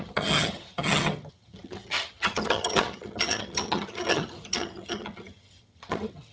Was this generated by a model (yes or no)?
yes